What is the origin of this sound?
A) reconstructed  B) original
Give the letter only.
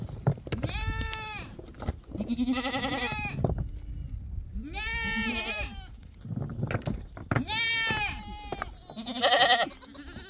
B